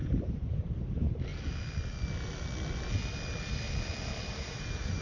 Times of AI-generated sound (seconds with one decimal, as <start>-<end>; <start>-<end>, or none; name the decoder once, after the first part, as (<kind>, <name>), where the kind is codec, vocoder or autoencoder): 0.0-1.3 (vocoder, BigVGAN v2); 4.3-5.0